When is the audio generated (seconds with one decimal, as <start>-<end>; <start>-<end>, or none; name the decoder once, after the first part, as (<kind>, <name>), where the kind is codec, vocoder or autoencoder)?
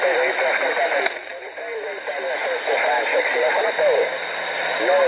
none